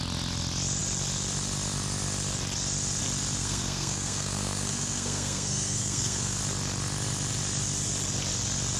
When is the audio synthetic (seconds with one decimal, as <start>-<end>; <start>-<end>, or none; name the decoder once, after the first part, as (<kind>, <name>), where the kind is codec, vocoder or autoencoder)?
3.4-6.4 (codec, SNAC)